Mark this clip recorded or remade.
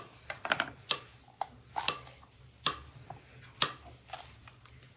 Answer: recorded